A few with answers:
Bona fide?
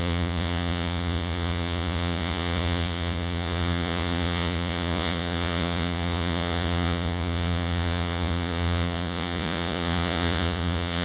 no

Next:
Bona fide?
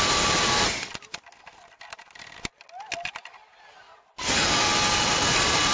yes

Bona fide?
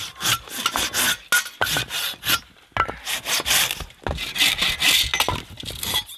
yes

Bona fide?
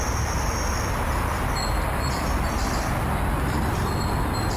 yes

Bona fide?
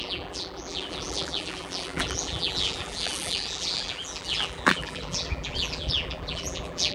no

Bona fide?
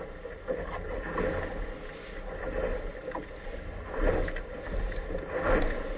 yes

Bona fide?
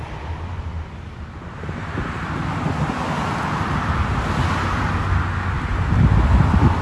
yes